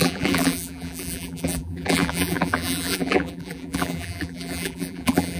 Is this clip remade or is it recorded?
remade